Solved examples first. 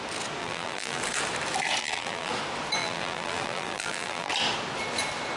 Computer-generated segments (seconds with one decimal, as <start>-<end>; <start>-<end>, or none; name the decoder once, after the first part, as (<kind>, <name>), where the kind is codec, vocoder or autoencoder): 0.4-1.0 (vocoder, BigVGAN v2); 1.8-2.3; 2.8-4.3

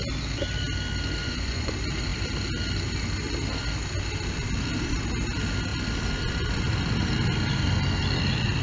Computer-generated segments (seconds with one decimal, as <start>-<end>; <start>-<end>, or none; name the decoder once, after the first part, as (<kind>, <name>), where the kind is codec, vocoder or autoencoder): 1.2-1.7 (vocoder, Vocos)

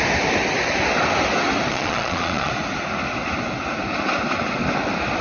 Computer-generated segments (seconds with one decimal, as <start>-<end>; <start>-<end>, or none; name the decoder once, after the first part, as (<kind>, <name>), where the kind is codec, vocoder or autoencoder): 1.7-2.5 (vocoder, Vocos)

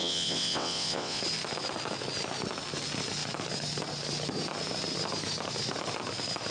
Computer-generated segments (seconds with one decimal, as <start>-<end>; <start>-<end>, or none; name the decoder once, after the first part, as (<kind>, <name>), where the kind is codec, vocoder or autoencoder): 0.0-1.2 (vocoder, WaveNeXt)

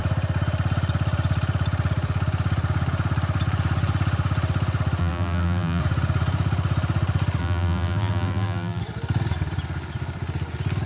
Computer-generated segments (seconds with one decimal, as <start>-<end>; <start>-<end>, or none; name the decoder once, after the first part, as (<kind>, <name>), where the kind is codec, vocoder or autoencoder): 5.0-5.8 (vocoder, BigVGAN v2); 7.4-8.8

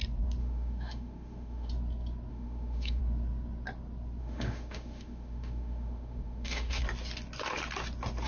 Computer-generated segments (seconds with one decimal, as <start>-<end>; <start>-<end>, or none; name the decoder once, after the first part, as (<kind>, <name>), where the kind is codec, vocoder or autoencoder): 0.4-1.7 (autoencoder, DAC-VAE); 2.3-3.0; 4.2-6.8